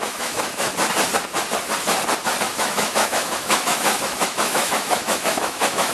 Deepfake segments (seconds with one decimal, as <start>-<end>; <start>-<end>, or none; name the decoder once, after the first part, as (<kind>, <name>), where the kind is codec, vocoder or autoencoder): 0.0-0.7 (autoencoder, DAC-VAE); 2.4-5.9